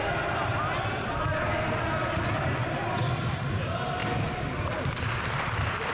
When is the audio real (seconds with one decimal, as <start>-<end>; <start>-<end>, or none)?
0.0-5.9